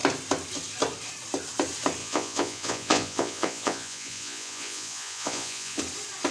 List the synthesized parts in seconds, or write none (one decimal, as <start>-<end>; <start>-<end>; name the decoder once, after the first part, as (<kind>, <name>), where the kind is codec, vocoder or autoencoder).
2.0-5.8 (vocoder, Vocos)